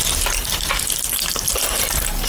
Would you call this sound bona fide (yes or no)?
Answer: yes